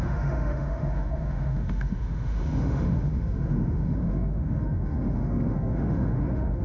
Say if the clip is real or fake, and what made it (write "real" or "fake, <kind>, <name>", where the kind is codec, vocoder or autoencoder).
fake, autoencoder, DAC-VAE